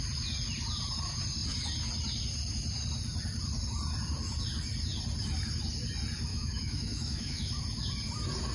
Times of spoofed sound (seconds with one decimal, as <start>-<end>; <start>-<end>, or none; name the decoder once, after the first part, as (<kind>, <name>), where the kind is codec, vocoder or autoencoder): 6.3-7.6 (autoencoder, DAC-VAE)

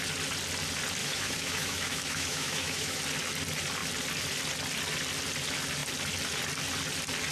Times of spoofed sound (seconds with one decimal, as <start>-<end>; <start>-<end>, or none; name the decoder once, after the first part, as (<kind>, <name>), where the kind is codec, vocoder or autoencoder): 1.0-3.0 (autoencoder, DAC-VAE)

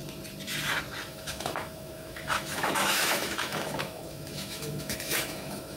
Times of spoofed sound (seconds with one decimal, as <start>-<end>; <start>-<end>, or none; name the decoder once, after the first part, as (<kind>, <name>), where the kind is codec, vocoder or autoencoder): 1.1-5.8 (autoencoder, DAC-VAE)

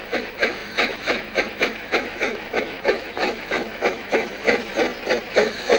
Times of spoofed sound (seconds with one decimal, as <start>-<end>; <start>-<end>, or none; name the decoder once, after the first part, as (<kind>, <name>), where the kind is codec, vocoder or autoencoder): 0.0-4.7 (autoencoder, DAC-VAE); 5.3-5.8

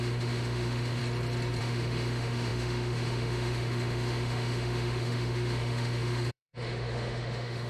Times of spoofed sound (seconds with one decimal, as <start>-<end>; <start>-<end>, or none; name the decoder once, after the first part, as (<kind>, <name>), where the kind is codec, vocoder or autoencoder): 0.0-1.0 (autoencoder, DAC-VAE); 1.6-7.7

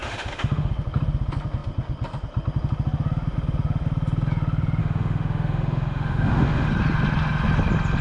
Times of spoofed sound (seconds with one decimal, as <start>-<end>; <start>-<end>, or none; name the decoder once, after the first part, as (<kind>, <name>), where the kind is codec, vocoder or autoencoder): 0.0-0.7 (autoencoder, DAC-VAE); 4.8-6.7